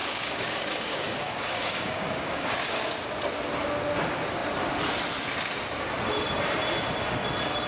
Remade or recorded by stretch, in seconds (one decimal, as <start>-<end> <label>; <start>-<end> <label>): 0.0-2.9 remade; 2.9-7.7 recorded